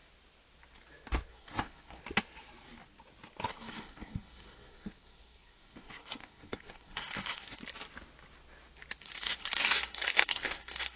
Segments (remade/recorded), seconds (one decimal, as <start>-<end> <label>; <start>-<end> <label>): 0.0-1.3 recorded; 1.3-2.0 remade; 2.0-3.5 recorded; 3.5-7.6 remade; 7.6-9.0 recorded; 9.0-11.0 remade